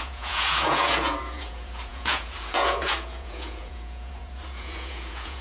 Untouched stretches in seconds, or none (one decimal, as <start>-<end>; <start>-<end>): none